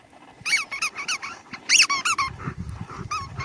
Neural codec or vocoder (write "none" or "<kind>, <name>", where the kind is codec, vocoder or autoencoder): none